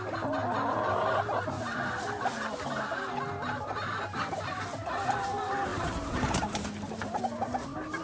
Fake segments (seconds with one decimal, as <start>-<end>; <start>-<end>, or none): 5.7-7.2

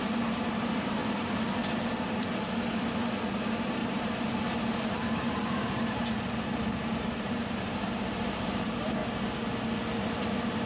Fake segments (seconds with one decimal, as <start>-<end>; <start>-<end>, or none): 0.0-1.0; 3.3-9.0